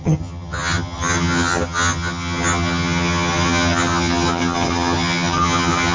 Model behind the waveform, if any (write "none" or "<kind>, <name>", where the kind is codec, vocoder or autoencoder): vocoder, HiFi-GAN